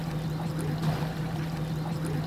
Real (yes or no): yes